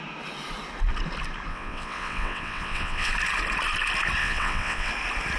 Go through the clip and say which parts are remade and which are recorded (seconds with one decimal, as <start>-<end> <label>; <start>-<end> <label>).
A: 0.0-1.5 recorded; 1.5-3.1 remade; 3.1-4.2 recorded; 4.2-4.9 remade; 4.9-5.4 recorded